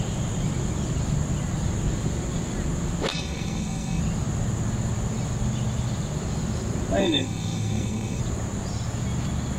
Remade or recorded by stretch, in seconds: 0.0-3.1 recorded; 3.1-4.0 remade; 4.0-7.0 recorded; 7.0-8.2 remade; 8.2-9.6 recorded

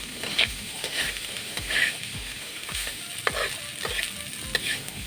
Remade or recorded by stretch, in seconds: 0.0-3.0 remade; 3.0-4.6 recorded; 4.6-5.1 remade

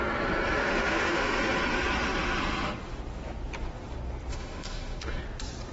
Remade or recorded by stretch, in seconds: 0.0-0.6 recorded; 0.6-1.4 remade; 1.4-4.3 recorded; 4.3-5.2 remade; 5.2-5.7 recorded